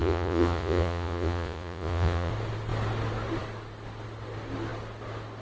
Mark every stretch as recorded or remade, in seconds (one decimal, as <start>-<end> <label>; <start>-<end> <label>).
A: 0.0-2.3 remade; 2.3-5.4 recorded